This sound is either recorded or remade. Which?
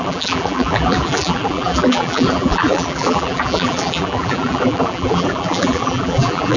remade